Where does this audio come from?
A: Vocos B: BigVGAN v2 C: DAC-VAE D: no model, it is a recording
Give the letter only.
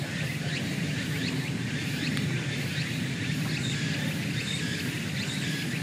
D